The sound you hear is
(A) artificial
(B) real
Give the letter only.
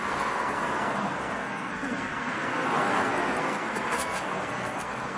A